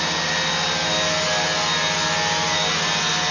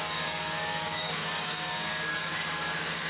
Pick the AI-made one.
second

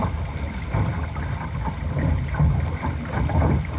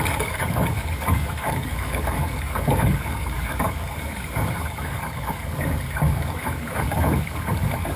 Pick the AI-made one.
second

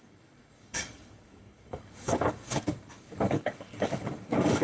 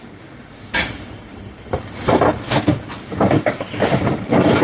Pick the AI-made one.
first